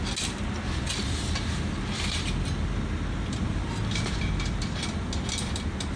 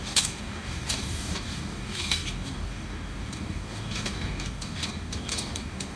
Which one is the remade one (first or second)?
second